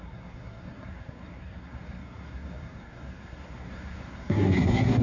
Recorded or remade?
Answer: remade